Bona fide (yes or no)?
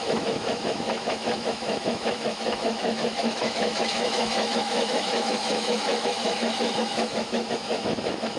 no